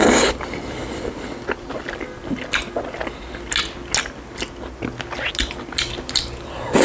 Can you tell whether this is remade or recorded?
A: recorded